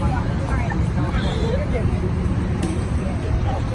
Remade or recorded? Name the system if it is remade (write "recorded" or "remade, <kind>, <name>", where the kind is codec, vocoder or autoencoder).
remade, vocoder, BigVGAN v2